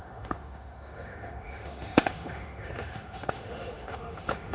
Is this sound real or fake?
fake